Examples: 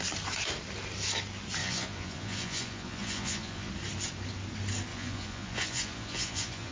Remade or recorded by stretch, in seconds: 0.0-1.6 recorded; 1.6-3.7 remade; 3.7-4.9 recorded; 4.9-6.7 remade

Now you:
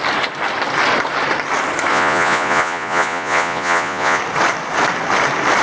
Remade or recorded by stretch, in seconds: 0.0-1.9 recorded; 1.9-4.2 remade; 4.2-5.6 recorded

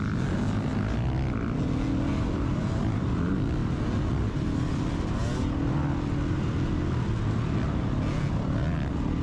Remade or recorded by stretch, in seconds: 0.0-9.2 recorded